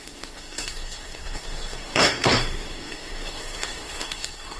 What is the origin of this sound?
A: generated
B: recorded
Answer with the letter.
A